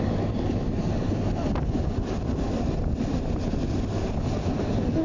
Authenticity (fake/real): real